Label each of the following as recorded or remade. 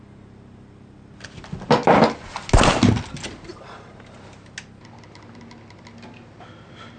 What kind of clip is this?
recorded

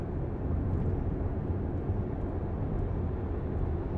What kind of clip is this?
recorded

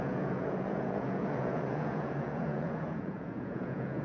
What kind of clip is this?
remade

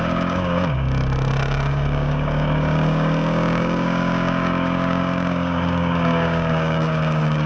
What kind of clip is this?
remade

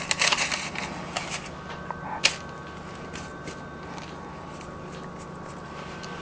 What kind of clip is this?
recorded